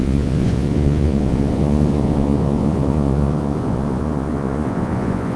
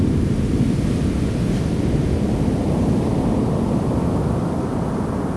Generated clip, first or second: first